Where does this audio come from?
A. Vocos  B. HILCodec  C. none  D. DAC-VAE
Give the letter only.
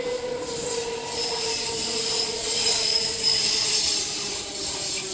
C